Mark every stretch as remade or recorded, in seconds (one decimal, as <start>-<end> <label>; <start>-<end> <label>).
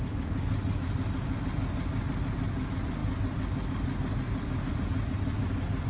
0.0-5.9 recorded